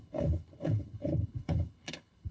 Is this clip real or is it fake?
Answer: fake